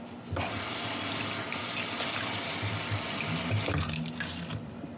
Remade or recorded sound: recorded